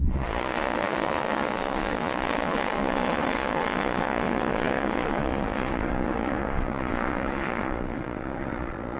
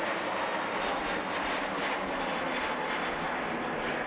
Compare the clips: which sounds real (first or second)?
second